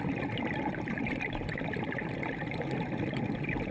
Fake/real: real